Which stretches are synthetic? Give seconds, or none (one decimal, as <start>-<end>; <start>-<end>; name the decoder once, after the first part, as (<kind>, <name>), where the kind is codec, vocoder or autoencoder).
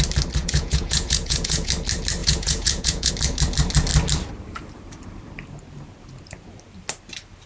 0.4-1.7 (vocoder, Vocos); 2.2-3.1